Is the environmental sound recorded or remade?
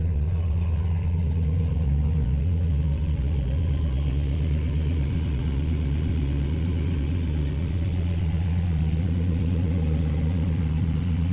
remade